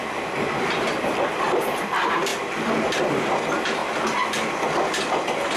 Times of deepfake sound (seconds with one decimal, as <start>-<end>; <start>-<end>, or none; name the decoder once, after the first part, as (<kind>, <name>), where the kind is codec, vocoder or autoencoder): none